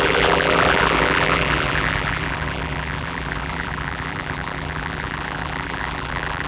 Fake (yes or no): yes